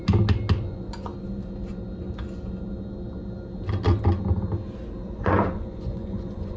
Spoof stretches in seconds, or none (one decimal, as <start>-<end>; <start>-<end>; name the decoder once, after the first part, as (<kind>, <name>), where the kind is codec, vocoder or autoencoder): 0.6-1.1 (vocoder, Vocos); 5.1-6.6